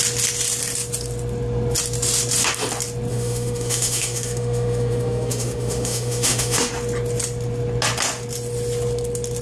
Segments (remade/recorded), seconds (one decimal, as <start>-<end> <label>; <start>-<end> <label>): 0.0-3.1 recorded; 3.1-6.7 remade; 6.7-9.4 recorded